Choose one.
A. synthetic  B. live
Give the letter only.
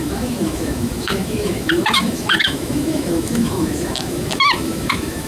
A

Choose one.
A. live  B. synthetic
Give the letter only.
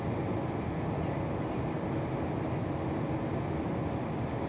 A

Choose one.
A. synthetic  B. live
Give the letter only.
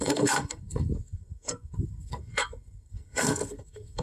A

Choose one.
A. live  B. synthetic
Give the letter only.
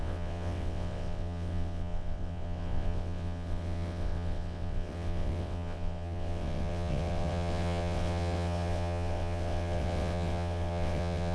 B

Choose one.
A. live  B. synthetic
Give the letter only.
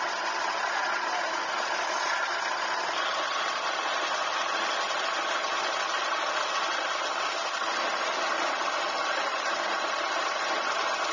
A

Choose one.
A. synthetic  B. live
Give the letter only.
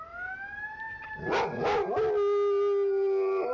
B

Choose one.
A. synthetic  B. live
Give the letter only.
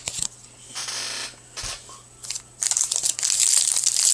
A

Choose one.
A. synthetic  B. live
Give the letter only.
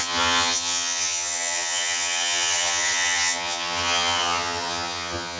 A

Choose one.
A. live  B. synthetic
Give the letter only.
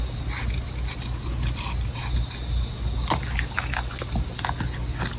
A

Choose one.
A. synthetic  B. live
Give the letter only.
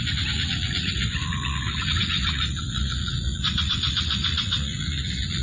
A